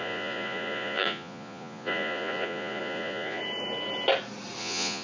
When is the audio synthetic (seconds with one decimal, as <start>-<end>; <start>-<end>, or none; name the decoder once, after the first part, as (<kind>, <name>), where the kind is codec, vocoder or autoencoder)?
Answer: 0.0-3.4 (vocoder, Vocos); 4.6-5.0